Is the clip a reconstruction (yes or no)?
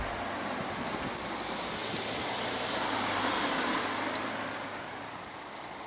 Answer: no